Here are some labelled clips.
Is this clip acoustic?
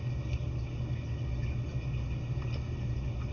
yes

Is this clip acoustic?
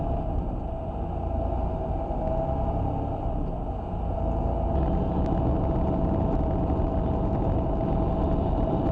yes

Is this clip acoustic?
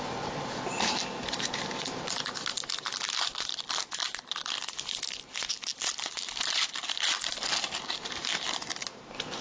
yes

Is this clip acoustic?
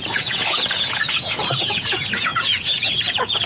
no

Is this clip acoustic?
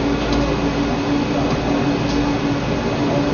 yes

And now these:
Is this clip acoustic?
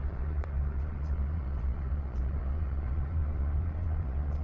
no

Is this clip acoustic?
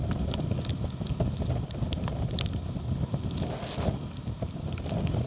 yes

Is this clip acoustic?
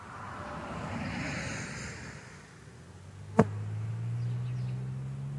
yes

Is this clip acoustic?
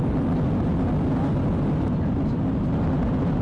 yes